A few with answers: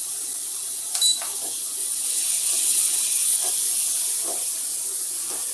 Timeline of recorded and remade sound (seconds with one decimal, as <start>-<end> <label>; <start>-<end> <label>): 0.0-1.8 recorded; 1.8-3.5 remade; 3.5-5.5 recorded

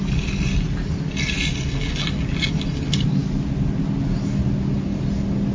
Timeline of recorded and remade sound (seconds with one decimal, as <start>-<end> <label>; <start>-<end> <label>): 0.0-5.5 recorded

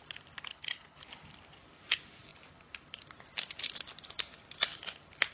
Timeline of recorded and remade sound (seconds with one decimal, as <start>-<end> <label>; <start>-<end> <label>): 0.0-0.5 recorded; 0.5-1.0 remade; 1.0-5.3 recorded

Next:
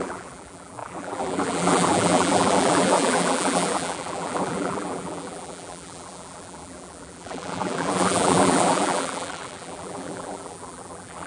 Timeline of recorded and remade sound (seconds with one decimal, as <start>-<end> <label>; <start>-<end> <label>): 0.0-11.3 remade

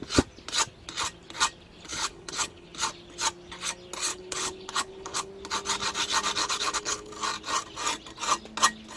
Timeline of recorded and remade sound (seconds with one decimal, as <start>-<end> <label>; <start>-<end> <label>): 0.0-1.9 recorded; 1.9-2.7 remade; 2.7-4.1 recorded; 4.1-5.3 remade; 5.3-6.4 recorded; 6.4-7.1 remade; 7.1-9.0 recorded

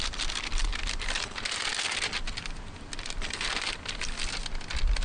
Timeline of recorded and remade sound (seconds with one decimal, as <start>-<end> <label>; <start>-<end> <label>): 0.0-5.0 recorded

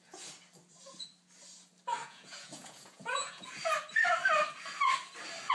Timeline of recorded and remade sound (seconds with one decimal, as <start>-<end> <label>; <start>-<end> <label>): 0.0-2.0 recorded; 2.0-3.6 remade; 3.6-5.5 recorded

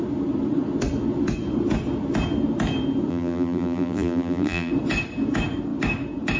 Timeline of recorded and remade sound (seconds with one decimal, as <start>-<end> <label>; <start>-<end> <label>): 0.0-3.1 recorded; 3.1-4.7 remade; 4.7-6.4 recorded